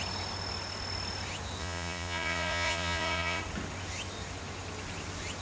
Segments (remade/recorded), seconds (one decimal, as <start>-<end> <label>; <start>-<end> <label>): 0.0-1.6 recorded; 1.6-3.4 remade; 3.4-5.4 recorded